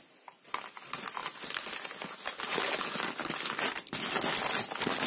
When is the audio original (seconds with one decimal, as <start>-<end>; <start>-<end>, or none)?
0.0-5.1